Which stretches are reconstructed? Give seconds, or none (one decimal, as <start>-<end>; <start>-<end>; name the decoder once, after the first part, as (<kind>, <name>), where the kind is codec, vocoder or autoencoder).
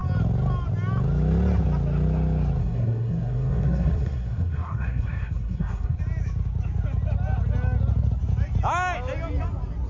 2.6-6.0 (codec, SNAC)